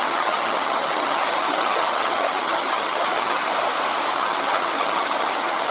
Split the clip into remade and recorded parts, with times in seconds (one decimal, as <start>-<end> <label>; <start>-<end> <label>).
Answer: 0.0-3.5 remade; 3.5-4.1 recorded; 4.1-5.7 remade